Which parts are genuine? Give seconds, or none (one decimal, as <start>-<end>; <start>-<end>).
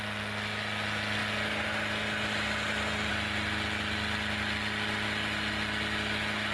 0.0-6.5